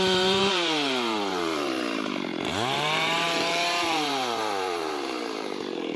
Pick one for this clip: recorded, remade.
remade